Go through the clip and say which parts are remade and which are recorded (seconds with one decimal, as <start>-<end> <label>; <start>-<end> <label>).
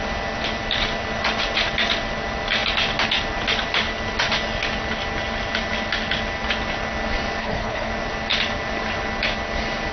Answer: 0.0-7.4 recorded; 7.4-7.9 remade; 7.9-9.9 recorded